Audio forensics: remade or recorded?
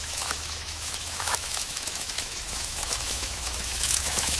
remade